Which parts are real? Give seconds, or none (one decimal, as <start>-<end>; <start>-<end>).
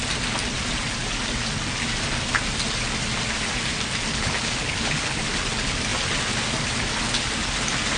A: 0.0-4.1; 5.2-8.0